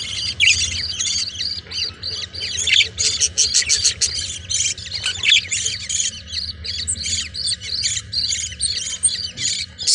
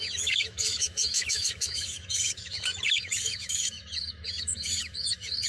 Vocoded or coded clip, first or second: second